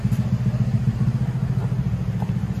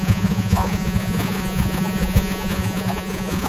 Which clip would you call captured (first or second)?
first